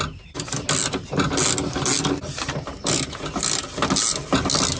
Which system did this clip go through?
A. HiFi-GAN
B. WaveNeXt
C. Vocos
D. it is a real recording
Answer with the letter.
D